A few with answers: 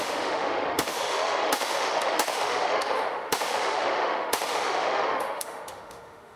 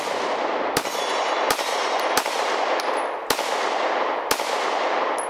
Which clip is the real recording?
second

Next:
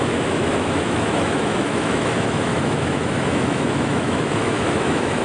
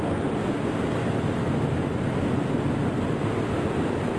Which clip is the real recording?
second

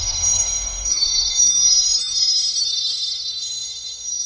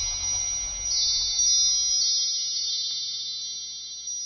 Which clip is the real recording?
second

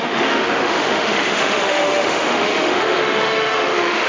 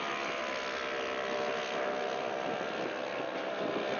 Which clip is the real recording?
second